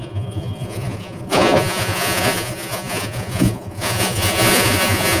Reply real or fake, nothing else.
fake